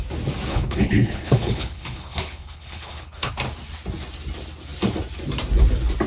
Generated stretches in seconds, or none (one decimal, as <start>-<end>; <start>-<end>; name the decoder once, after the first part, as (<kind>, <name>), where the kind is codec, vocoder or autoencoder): 0.5-3.3 (codec, HILCodec)

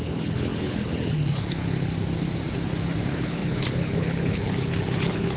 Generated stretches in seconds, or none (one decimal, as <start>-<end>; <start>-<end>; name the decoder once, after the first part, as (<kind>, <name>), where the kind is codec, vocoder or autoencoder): 0.0-1.9 (codec, HILCodec); 3.0-5.4

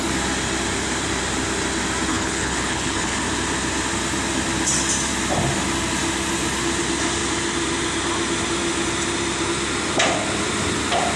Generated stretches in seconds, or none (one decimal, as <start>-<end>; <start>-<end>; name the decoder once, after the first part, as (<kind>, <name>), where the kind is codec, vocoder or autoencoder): 2.1-3.2 (codec, HILCodec)

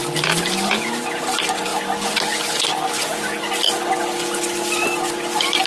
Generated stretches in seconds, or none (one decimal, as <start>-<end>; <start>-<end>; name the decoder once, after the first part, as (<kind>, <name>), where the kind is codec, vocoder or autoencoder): none

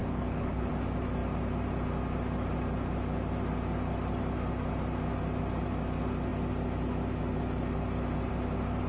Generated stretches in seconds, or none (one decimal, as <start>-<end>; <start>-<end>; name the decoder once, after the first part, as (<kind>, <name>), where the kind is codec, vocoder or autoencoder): 0.0-0.7 (codec, HILCodec)

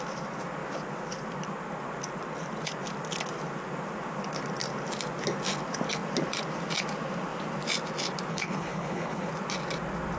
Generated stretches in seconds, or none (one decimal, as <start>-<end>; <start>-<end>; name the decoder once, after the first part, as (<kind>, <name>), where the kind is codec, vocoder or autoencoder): 8.3-9.3 (codec, HILCodec)

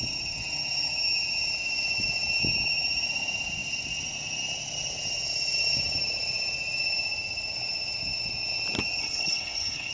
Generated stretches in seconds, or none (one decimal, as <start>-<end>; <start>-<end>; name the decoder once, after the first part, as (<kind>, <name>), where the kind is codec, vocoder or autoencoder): 9.0-9.9 (codec, HILCodec)